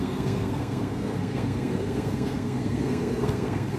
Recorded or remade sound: remade